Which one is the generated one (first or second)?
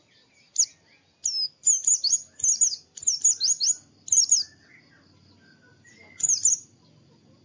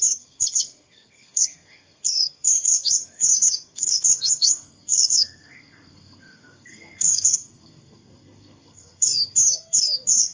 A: second